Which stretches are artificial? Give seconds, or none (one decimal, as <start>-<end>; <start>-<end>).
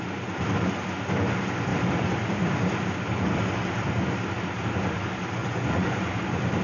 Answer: 5.4-6.1